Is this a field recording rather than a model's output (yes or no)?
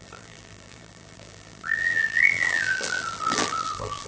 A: no